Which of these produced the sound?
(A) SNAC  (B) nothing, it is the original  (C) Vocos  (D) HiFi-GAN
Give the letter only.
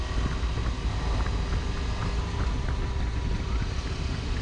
B